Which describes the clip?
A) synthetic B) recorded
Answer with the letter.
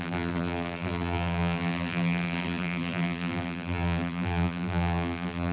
A